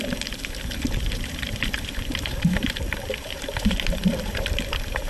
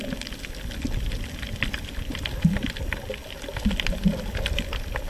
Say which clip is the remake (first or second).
first